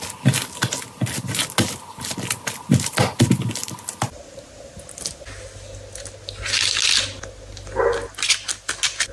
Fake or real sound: real